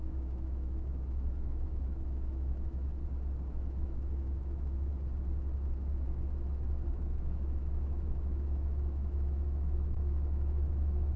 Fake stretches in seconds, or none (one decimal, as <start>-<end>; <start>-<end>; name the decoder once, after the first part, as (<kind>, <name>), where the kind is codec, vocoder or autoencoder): 0.0-2.9 (autoencoder, DAC-VAE); 3.5-4.9; 6.9-11.2